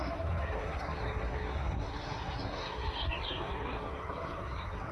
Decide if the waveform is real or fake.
fake